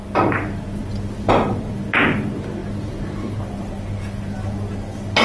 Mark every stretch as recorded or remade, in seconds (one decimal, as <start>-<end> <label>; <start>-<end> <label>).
0.0-5.2 recorded